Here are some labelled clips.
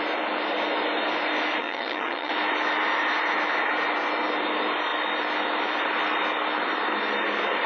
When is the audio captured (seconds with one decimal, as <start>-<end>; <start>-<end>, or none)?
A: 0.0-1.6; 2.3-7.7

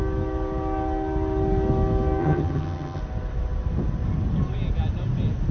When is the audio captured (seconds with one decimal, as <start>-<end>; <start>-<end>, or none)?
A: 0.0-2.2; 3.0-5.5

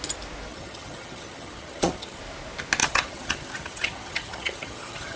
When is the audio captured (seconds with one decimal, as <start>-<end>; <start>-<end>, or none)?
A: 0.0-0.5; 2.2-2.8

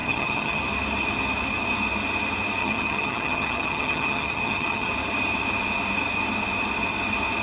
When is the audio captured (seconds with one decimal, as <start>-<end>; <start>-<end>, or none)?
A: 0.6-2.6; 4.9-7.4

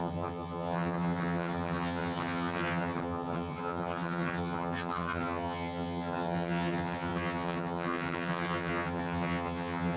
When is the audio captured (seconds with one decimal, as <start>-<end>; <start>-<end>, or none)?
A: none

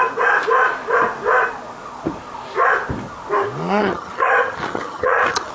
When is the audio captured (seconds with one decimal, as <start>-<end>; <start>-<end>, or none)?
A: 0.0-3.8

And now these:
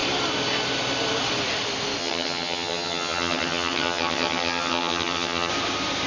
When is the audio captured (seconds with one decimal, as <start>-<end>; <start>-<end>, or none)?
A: 0.0-2.0; 5.5-6.1